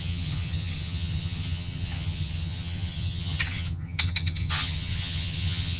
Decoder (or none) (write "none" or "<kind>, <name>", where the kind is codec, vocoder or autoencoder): vocoder, HiFi-GAN